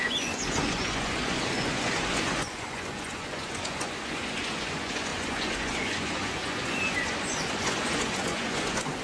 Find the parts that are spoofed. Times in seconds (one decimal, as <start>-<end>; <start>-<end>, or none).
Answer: 0.0-9.0